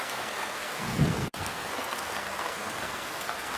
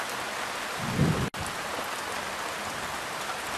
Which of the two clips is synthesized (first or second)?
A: first